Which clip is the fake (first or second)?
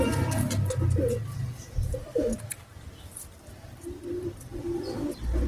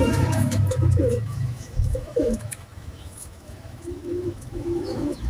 second